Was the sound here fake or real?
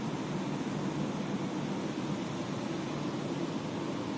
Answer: real